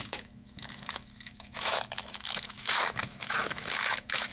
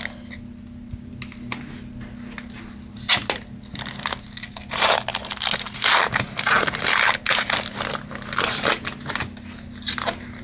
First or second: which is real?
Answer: second